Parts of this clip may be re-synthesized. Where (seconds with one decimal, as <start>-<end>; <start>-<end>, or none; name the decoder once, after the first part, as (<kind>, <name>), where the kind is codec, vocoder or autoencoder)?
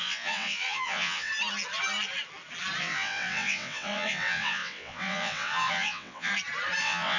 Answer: 0.0-1.3 (vocoder, WaveNeXt); 2.8-6.3; 6.8-7.2